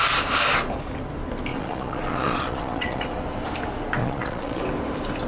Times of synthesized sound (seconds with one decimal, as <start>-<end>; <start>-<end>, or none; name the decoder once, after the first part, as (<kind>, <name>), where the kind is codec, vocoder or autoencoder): 1.5-3.0 (vocoder, Vocos); 4.0-4.6